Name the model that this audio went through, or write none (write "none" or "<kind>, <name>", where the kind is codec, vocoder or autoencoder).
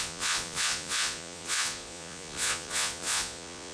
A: vocoder, Vocos